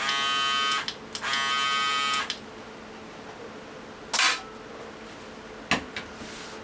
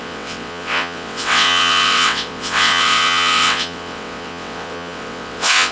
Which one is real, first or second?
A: first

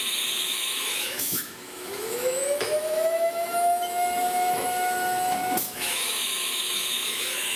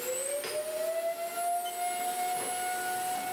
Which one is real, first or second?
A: second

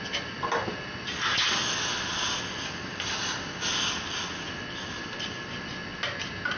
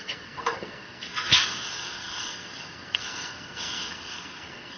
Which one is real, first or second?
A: first